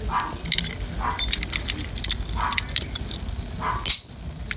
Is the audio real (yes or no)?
yes